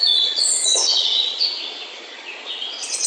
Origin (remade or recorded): remade